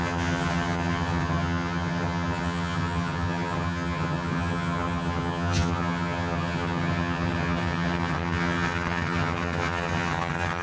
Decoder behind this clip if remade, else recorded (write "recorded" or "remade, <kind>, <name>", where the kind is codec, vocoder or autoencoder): remade, vocoder, HiFi-GAN